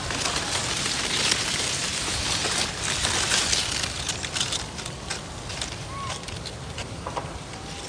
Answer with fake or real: real